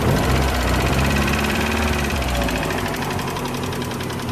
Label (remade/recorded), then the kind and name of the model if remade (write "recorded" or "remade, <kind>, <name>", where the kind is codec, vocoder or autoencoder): remade, vocoder, BigVGAN v2